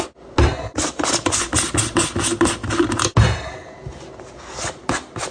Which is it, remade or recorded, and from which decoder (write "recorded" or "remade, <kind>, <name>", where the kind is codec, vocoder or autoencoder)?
recorded